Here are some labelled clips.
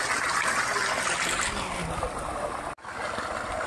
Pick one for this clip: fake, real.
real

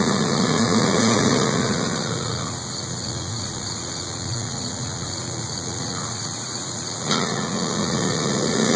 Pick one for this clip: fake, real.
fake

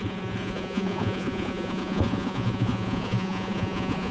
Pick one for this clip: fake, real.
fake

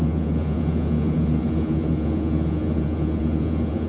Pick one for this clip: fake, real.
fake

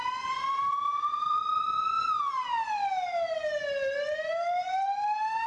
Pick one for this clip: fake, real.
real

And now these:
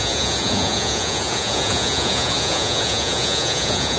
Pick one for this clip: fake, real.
fake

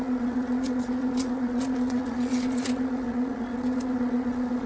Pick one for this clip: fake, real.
fake